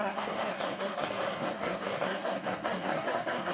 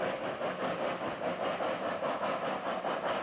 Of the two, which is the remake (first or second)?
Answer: first